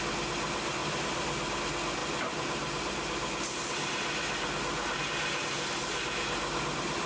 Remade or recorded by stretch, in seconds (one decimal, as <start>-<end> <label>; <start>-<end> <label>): 0.0-0.8 recorded; 0.8-1.6 remade; 1.6-7.1 recorded